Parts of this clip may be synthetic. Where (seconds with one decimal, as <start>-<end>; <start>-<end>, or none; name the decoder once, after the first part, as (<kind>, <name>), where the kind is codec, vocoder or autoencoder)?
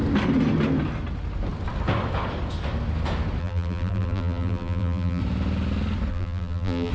3.4-5.2 (vocoder, BigVGAN v2); 6.1-6.9